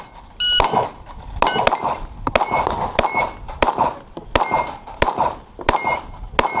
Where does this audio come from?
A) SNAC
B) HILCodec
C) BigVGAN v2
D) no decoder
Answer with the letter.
D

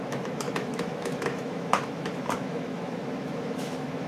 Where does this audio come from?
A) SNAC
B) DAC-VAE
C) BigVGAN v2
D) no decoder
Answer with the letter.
B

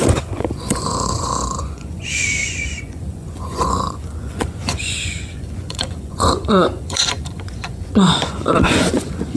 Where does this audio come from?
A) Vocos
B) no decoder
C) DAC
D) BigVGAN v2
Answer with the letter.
A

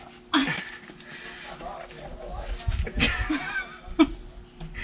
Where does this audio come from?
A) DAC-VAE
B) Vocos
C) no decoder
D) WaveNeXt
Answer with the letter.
C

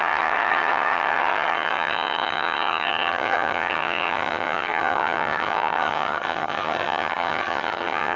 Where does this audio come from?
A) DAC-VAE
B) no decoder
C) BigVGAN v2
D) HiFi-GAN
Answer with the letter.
D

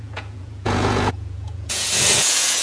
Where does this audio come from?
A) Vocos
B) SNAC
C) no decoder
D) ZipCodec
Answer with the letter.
A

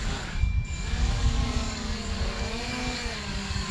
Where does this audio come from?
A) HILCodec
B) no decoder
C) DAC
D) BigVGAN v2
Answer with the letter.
C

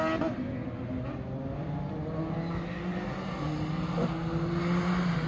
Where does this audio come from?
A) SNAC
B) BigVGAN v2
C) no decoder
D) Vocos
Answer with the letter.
C